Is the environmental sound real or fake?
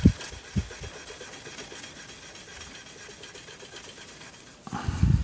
real